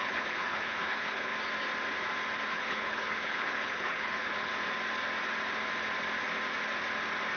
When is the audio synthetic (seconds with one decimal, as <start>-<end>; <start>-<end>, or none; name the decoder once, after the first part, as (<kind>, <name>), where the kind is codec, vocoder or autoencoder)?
0.0-1.3 (codec, HILCodec); 2.5-4.5